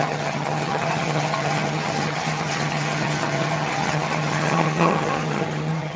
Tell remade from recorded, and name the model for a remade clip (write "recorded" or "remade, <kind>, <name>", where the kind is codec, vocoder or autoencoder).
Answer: remade, vocoder, HiFi-GAN